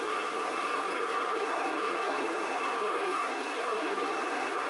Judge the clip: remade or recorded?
remade